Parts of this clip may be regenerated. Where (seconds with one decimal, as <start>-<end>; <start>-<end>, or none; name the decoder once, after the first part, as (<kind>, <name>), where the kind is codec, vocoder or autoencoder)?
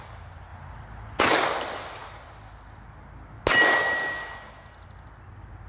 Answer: none